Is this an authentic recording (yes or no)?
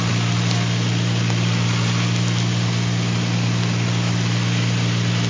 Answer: yes